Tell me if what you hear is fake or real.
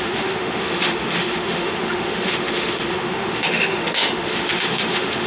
fake